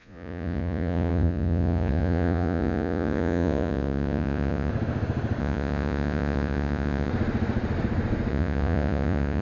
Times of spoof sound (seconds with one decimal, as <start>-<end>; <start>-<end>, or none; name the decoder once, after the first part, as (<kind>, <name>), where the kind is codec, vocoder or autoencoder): 0.0-4.7 (vocoder, Vocos); 5.4-7.1; 8.3-9.4